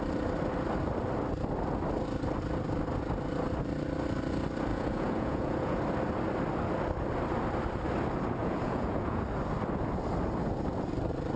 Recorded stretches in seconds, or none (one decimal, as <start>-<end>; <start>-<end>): 0.0-4.7; 5.8-8.4; 9.2-11.4